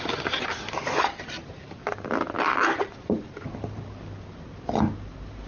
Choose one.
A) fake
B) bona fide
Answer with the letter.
B